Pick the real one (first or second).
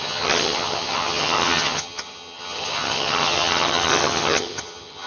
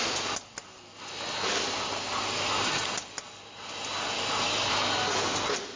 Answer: second